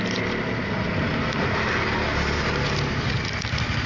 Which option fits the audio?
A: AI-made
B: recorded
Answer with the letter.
B